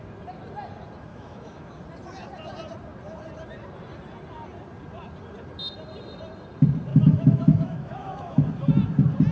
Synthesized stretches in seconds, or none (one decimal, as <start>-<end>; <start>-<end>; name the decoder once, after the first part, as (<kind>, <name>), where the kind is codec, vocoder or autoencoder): 1.1-1.7 (autoencoder, DAC-VAE); 6.9-8.4